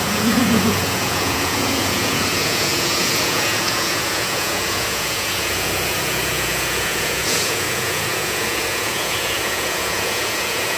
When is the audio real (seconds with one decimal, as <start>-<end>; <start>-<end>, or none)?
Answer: none